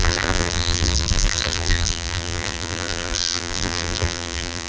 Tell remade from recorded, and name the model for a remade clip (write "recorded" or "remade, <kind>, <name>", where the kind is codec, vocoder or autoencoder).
remade, vocoder, BigVGAN v2